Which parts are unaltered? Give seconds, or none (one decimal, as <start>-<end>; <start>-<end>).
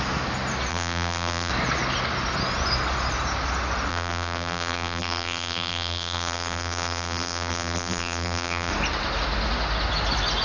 0.0-0.7; 1.5-3.9; 8.7-10.4